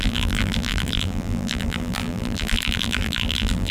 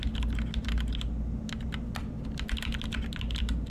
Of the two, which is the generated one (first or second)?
first